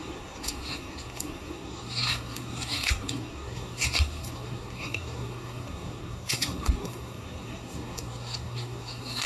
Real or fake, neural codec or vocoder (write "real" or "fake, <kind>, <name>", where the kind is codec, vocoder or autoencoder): fake, codec, SNAC